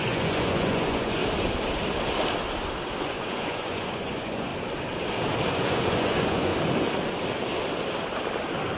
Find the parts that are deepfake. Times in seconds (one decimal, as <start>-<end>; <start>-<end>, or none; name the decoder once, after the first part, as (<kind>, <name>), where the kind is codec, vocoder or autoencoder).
0.0-1.2 (vocoder, Vocos); 3.0-4.5; 5.5-6.5